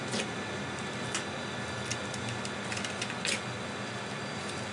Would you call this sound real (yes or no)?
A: yes